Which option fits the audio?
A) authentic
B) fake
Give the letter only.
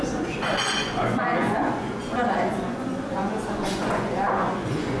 B